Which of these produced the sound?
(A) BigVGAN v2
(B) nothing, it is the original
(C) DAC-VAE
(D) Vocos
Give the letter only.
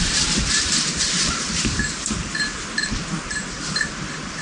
A